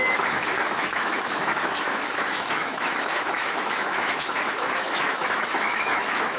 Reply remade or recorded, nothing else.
remade